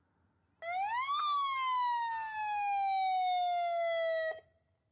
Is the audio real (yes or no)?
yes